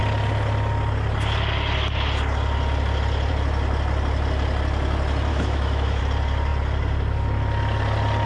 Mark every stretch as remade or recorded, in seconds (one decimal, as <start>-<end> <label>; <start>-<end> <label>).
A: 0.0-5.3 recorded; 5.3-6.0 remade; 6.0-8.3 recorded